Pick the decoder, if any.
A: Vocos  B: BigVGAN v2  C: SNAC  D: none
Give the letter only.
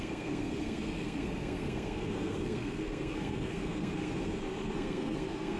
C